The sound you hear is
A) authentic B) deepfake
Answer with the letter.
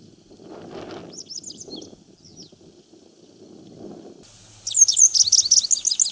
A